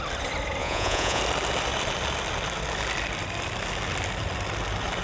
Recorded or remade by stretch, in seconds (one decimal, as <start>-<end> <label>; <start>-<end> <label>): 0.0-0.6 recorded; 0.6-1.2 remade; 1.2-5.0 recorded